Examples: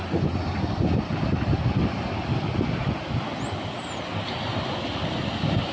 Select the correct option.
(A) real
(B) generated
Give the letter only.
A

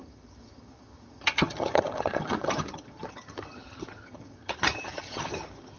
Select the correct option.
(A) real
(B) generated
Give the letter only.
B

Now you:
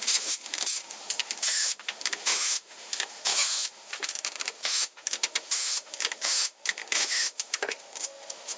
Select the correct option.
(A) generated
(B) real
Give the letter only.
A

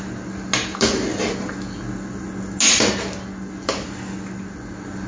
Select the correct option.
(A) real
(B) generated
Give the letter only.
A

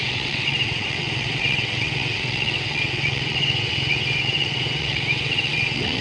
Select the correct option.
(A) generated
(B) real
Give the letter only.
A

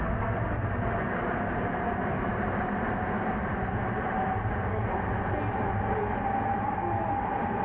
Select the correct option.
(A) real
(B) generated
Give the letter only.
A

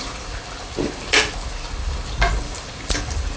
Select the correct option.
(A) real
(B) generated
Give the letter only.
A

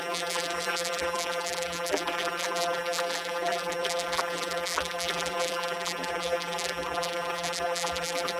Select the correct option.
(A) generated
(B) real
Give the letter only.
A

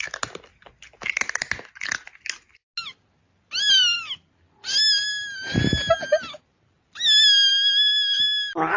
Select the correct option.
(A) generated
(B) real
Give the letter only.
B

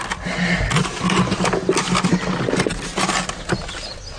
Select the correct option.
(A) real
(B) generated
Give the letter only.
A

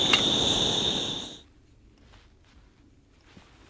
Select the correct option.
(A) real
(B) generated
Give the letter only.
A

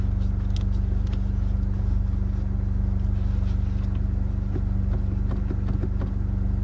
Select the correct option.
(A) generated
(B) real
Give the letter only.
B